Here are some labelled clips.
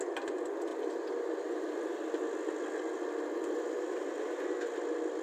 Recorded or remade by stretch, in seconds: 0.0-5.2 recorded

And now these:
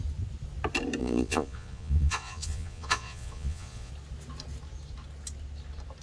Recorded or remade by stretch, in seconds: 0.0-1.0 recorded; 1.0-3.9 remade; 3.9-6.0 recorded

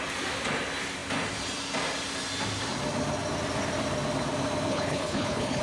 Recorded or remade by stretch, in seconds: 0.0-4.7 recorded; 4.7-5.6 remade

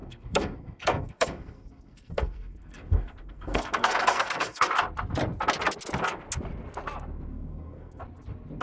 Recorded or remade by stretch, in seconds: 0.0-4.7 remade; 4.7-7.3 recorded; 7.3-8.0 remade; 8.0-8.6 recorded

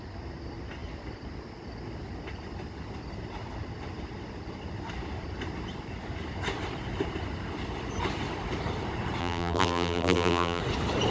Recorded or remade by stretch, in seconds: 0.0-9.2 recorded; 9.2-10.6 remade; 10.6-11.1 recorded

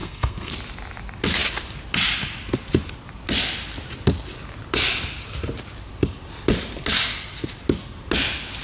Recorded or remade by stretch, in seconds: 0.0-0.5 remade; 0.5-8.6 recorded

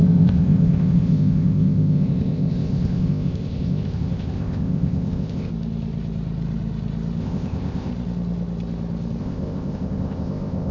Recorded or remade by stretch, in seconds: 0.0-5.5 remade; 5.5-7.2 recorded; 7.2-7.9 remade; 7.9-9.2 recorded; 9.2-10.7 remade